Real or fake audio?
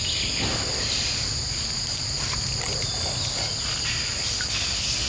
real